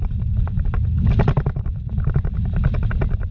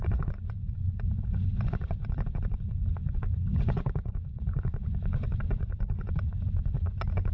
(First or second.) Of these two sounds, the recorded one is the first